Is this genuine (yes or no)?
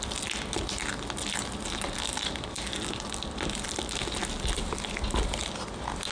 yes